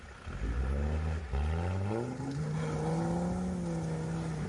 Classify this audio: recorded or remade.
recorded